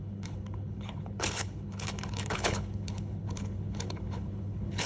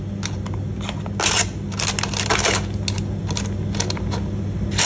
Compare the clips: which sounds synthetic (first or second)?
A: first